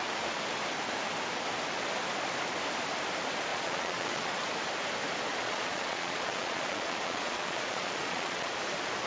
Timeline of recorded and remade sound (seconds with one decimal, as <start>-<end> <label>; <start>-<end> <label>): 0.0-3.5 recorded; 3.5-4.3 remade; 4.3-5.3 recorded; 5.3-8.5 remade; 8.5-9.1 recorded